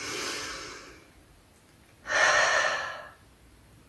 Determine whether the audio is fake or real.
real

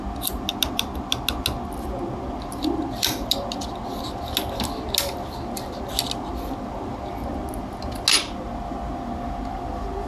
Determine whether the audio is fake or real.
real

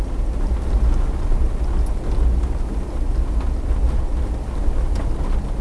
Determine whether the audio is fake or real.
real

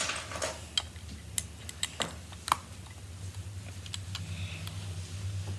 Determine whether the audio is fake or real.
real